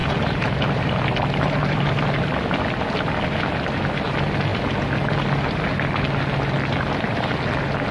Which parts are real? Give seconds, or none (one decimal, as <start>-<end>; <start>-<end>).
1.9-7.9